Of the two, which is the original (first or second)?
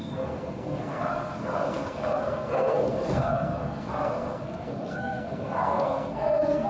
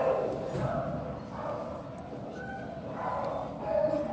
second